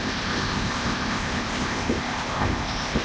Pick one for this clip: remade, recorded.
remade